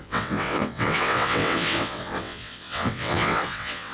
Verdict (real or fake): fake